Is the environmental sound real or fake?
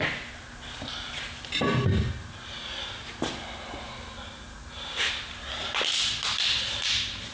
real